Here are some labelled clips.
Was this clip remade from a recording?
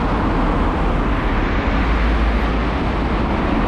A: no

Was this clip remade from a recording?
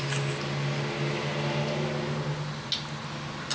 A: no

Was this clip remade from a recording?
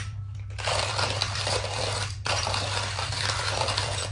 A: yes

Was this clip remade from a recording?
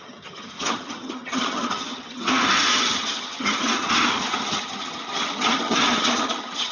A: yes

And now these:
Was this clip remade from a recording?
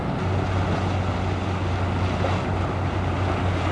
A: no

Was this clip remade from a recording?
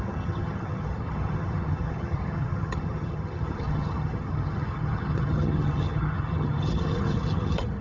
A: yes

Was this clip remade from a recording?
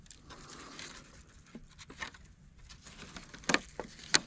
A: no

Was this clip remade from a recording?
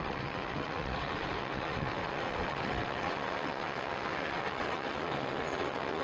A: yes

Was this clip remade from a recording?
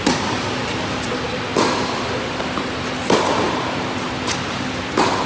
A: no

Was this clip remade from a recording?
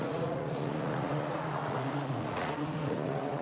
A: yes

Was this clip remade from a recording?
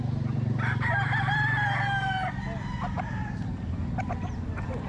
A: yes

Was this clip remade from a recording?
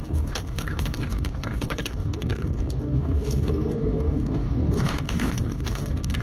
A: yes